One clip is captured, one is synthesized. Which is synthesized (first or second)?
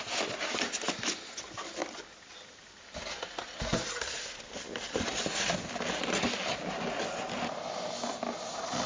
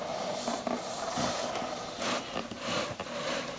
second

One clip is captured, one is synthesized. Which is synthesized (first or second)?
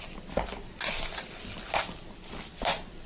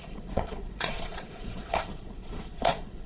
second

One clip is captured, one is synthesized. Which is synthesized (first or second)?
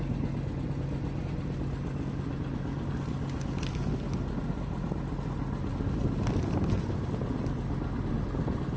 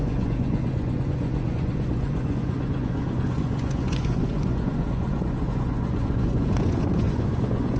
second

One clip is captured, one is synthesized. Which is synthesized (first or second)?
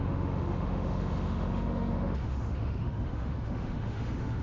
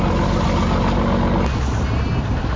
first